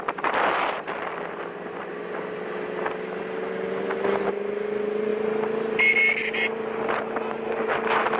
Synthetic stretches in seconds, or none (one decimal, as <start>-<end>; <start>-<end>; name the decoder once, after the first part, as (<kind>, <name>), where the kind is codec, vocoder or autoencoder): none